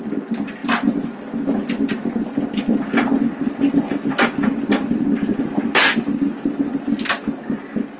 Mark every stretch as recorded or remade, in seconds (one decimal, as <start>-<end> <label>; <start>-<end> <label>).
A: 0.0-8.0 recorded